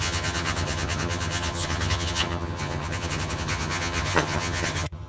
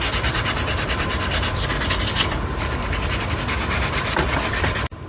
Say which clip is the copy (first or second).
first